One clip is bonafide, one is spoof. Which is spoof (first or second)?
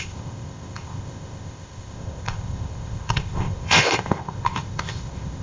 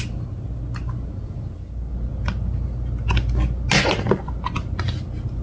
first